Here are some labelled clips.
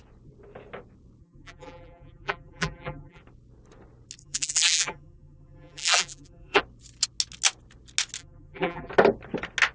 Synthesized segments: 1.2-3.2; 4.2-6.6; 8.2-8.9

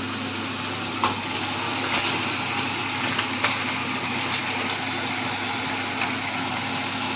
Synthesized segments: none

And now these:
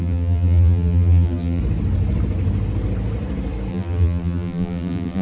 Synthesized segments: 0.0-1.6; 3.7-5.2